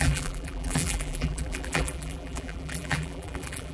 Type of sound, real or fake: fake